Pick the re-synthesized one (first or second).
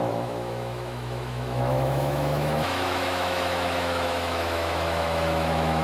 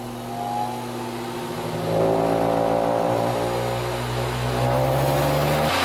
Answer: first